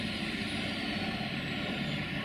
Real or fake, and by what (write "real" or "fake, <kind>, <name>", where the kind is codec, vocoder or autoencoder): real